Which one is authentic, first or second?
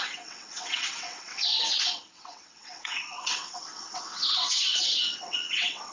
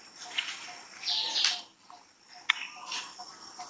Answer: second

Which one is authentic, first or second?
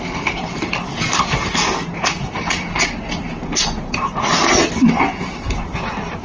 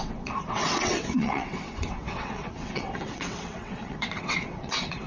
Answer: first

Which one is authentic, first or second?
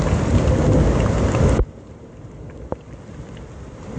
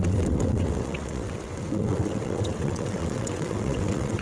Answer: first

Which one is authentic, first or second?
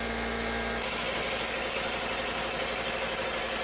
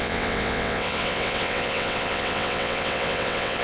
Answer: first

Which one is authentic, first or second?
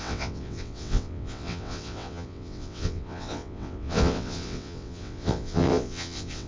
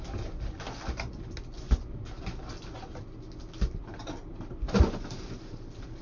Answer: second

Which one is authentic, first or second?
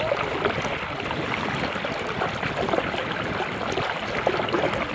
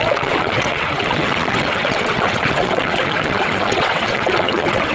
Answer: first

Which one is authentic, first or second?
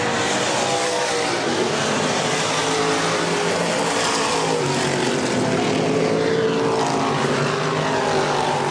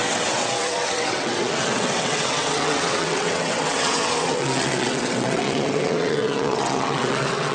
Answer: first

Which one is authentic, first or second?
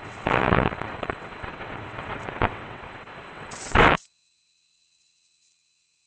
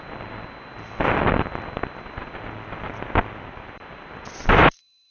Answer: second